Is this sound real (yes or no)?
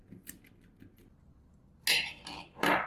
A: yes